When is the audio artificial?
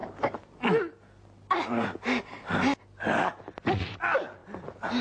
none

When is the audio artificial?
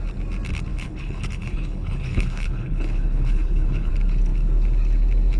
0.7-3.9 (codec, HILCodec)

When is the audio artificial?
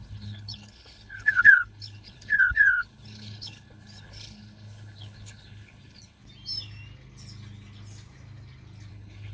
0.0-6.2 (codec, HILCodec); 8.9-9.3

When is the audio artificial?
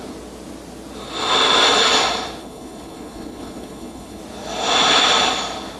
2.4-4.2 (codec, HILCodec)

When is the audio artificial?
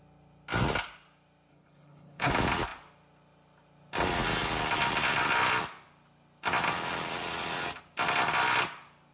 1.5-2.3 (codec, HILCodec)